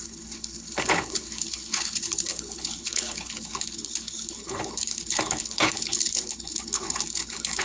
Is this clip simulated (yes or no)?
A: yes